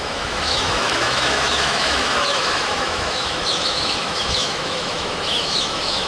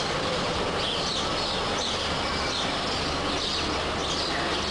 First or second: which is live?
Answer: second